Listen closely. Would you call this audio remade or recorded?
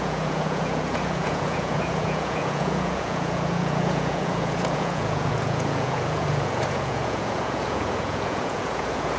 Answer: remade